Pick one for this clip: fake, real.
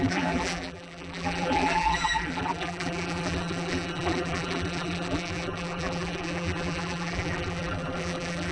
fake